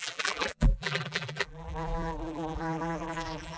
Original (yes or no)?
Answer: no